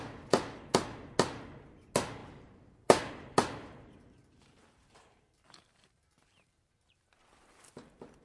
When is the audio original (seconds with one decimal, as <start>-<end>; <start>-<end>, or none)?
0.0-2.2; 7.1-8.2